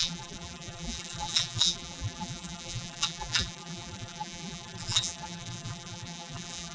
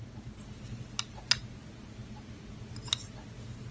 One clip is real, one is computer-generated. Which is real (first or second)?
second